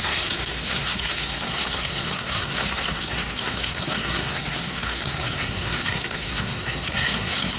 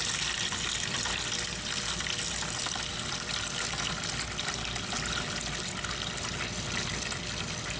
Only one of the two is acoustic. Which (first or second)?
second